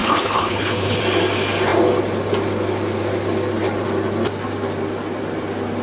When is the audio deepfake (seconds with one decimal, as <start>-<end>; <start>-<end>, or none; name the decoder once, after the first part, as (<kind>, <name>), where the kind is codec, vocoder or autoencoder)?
0.0-1.0 (codec, HILCodec)